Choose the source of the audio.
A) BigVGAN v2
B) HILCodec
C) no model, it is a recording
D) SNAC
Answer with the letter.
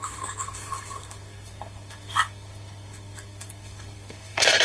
D